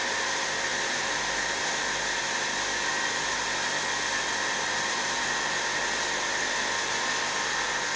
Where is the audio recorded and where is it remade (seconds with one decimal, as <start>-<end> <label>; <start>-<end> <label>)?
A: 0.0-8.0 recorded

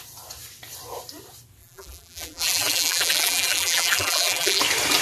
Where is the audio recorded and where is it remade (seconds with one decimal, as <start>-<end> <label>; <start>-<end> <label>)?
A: 0.0-1.6 recorded; 1.6-4.6 remade; 4.6-5.0 recorded

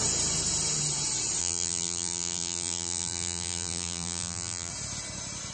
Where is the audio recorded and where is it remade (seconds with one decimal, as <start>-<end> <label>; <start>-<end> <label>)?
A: 0.0-1.4 recorded; 1.4-4.7 remade; 4.7-5.5 recorded

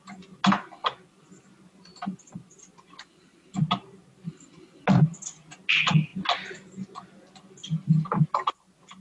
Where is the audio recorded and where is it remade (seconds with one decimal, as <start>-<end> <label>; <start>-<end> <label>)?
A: 0.0-9.0 recorded

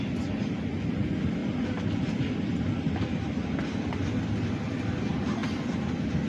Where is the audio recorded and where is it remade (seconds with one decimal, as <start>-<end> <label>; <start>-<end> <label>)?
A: 0.0-1.4 recorded; 1.4-2.9 remade; 2.9-6.3 recorded

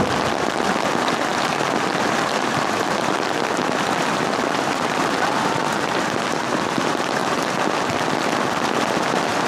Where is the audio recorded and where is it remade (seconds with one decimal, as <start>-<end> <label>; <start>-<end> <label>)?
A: 0.0-9.5 recorded